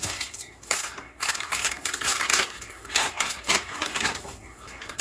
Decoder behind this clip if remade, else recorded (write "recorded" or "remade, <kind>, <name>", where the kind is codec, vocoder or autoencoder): remade, codec, SNAC